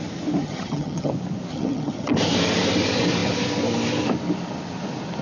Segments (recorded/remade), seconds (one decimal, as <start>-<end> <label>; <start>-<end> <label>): 0.0-0.4 recorded; 0.4-1.1 remade; 1.1-1.5 recorded; 1.5-2.1 remade; 2.1-5.2 recorded